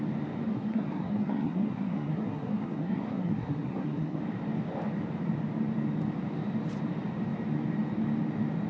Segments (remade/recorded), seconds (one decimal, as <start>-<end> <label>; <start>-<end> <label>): 0.0-0.5 recorded; 0.5-4.2 remade; 4.2-8.7 recorded